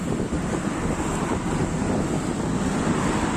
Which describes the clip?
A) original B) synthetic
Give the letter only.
A